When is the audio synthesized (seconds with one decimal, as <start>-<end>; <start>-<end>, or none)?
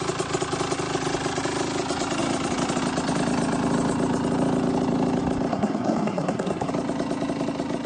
5.5-6.7